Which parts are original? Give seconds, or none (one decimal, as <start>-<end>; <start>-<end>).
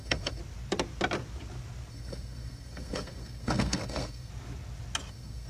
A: 0.4-1.9; 4.3-5.1